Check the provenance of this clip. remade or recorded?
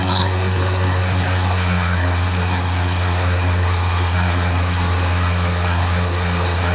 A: remade